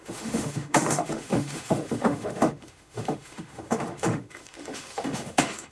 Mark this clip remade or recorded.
remade